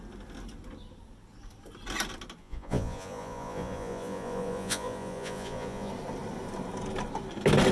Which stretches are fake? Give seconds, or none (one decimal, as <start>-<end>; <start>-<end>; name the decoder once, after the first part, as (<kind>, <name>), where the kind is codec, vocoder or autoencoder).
2.4-5.9 (vocoder, Vocos)